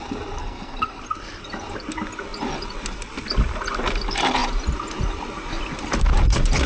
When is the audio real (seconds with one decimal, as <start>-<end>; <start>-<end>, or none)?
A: 0.0-0.4; 1.0-6.7